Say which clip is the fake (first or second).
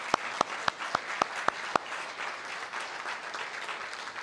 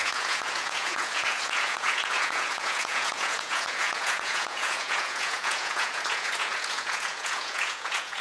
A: second